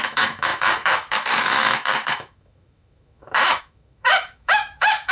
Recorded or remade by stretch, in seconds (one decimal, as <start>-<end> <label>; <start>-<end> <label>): 0.0-5.1 remade